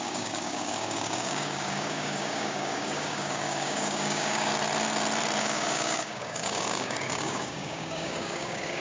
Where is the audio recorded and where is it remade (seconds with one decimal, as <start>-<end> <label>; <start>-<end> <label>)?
0.0-4.5 remade; 4.5-5.4 recorded; 5.4-8.8 remade